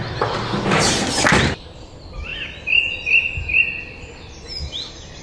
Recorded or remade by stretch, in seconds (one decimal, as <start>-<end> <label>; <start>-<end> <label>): 0.0-5.2 recorded